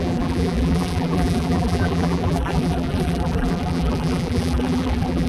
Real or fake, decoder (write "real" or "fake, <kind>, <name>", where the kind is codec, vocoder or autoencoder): fake, vocoder, BigVGAN v2